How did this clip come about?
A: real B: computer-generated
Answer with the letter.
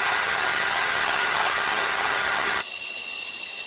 B